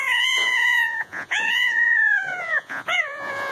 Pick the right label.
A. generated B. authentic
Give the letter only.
A